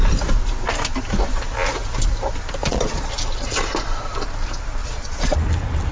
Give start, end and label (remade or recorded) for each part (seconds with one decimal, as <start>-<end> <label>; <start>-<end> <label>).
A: 0.0-2.6 recorded; 2.6-3.1 remade; 3.1-4.8 recorded; 4.8-5.5 remade; 5.5-5.9 recorded